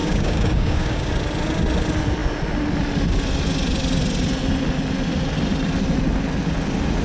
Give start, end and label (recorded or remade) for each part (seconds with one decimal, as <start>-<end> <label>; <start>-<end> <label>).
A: 0.0-1.1 remade; 1.1-7.0 recorded